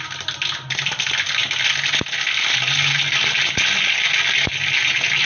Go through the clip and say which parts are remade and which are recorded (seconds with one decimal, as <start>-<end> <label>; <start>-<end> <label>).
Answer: 0.0-5.2 recorded

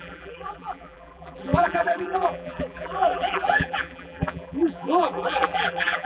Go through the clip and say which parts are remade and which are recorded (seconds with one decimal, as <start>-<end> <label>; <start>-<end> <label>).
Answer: 0.0-6.0 remade

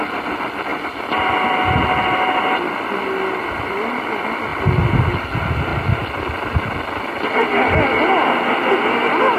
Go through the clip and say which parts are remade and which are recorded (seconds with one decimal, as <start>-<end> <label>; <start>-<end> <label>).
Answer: 0.0-0.7 recorded; 0.7-4.1 remade; 4.1-9.4 recorded